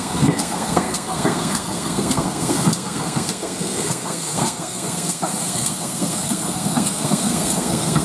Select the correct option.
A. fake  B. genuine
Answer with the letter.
A